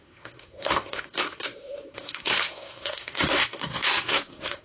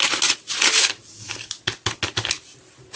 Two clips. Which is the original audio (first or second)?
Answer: second